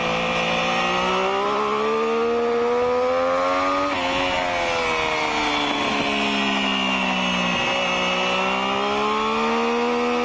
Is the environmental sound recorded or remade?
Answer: recorded